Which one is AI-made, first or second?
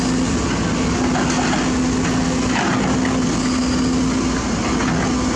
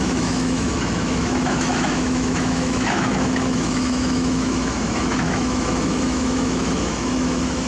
second